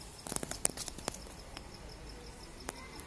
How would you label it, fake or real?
real